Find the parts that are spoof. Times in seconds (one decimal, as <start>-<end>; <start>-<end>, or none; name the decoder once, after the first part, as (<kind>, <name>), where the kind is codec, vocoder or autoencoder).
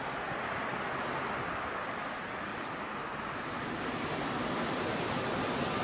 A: 2.5-5.2 (vocoder, BigVGAN v2)